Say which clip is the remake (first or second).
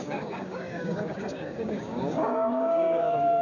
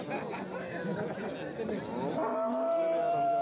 first